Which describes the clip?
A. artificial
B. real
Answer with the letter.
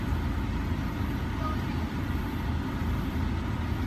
B